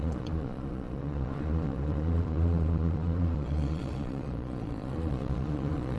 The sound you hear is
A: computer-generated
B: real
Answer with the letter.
A